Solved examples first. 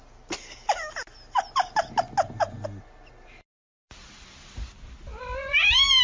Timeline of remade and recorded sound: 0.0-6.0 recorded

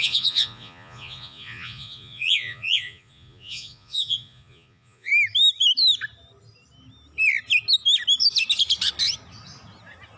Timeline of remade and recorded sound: 0.0-5.1 remade; 5.1-10.2 recorded

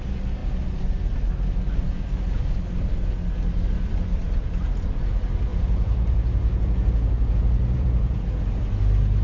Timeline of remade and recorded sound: 0.0-5.5 recorded; 5.5-8.6 remade; 8.6-9.2 recorded